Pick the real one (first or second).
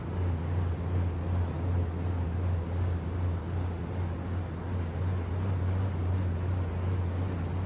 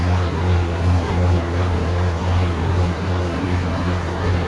first